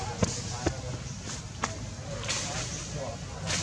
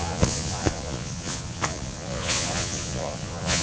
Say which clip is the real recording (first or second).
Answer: first